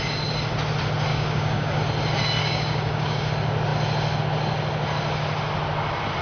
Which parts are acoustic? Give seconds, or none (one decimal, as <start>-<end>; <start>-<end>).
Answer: 0.0-1.1; 1.8-2.4; 3.3-6.2

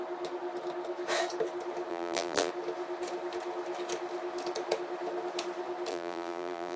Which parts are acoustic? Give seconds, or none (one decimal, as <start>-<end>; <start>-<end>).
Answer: 0.0-1.9; 2.5-5.9